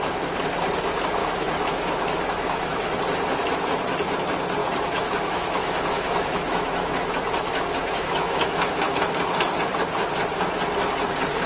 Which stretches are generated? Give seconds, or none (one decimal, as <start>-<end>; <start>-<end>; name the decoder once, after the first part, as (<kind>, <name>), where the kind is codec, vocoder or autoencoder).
1.2-3.0 (autoencoder, DAC-VAE); 4.6-9.1